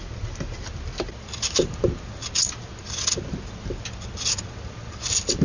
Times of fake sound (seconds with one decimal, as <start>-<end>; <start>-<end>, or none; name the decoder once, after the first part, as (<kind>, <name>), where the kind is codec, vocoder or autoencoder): none